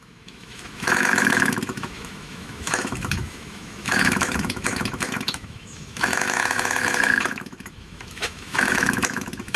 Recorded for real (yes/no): no